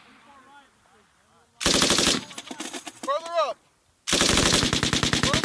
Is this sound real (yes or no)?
yes